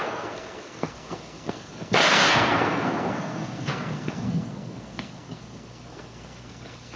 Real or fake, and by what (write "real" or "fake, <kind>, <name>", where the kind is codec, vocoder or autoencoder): fake, codec, SNAC